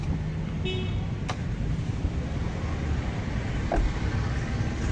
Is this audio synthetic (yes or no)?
no